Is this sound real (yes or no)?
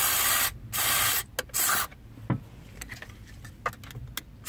yes